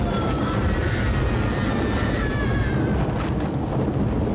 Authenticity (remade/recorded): recorded